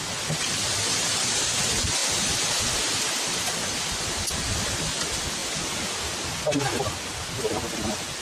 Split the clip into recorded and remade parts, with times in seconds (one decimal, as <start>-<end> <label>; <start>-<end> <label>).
0.0-8.2 recorded